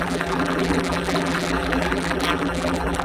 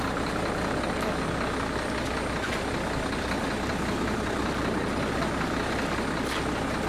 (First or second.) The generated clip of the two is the first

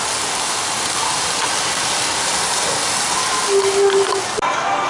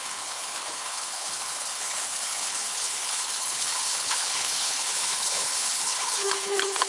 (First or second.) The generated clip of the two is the second